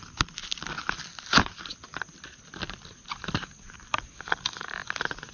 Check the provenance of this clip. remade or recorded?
recorded